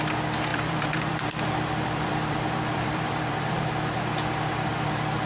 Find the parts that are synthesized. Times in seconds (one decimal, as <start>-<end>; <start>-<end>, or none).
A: 0.5-3.7; 4.7-5.3